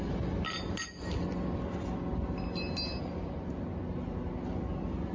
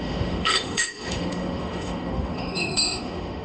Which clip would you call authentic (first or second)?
first